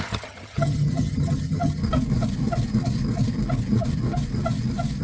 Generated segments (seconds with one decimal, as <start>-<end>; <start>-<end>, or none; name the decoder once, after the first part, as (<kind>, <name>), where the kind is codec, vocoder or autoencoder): 0.0-1.8 (vocoder, HiFi-GAN)